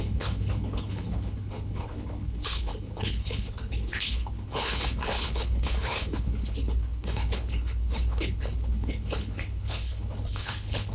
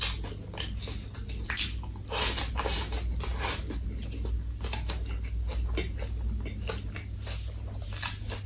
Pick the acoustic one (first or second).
second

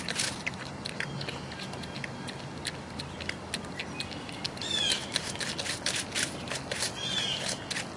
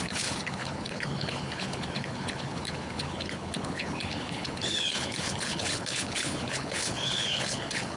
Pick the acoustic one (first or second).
first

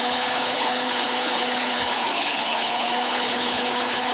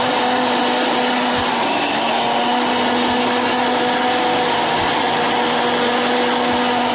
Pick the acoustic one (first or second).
second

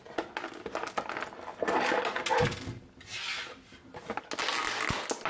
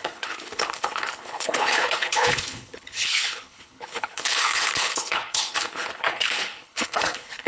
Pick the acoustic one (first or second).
first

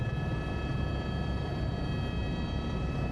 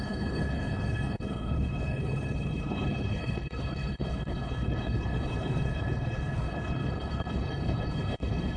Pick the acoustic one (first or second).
first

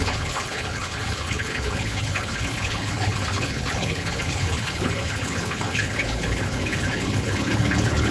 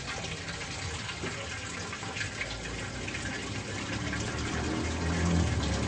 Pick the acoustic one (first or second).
second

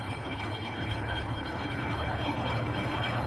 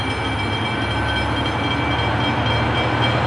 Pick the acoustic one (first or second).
second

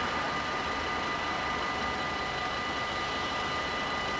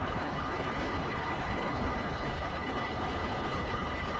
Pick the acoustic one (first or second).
first